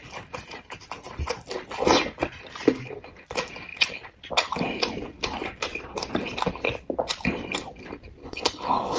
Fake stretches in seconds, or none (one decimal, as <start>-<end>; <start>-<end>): 8.2-9.0